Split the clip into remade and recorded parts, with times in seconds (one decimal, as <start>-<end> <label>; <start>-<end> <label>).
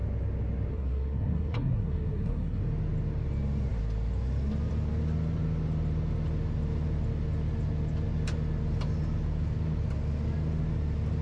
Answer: 0.0-0.7 recorded; 0.7-2.6 remade; 2.6-11.2 recorded